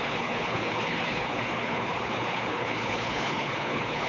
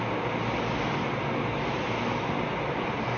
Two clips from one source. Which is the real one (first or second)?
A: second